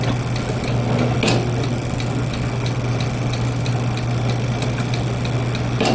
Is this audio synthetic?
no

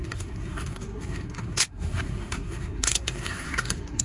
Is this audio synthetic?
yes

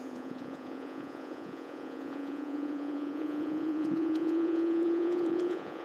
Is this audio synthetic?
yes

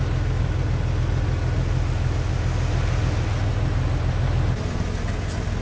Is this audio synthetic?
no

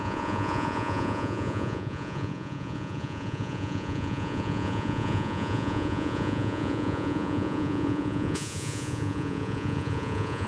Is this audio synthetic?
yes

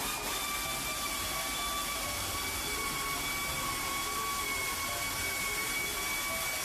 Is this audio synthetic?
no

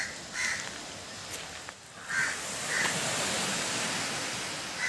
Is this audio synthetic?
no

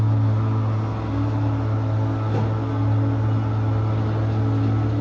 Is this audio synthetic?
no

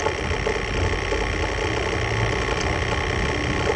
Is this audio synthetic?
no